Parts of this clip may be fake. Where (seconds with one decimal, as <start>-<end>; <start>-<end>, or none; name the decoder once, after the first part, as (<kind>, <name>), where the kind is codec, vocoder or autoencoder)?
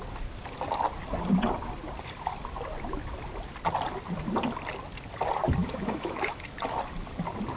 5.6-6.5 (autoencoder, DAC-VAE)